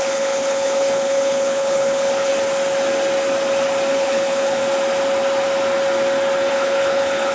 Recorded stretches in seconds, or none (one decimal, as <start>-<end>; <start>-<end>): 2.3-3.9; 4.6-6.5